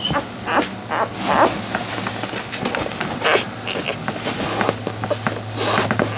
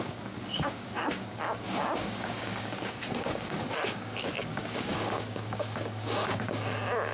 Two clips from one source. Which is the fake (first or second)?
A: second